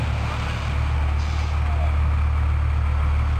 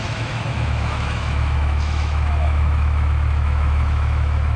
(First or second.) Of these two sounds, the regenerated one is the second